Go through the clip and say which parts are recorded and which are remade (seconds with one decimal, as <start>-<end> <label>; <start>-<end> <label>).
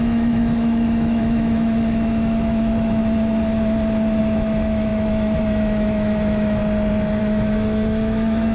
0.0-3.0 remade; 3.0-4.2 recorded; 4.2-6.6 remade; 6.6-7.2 recorded; 7.2-8.5 remade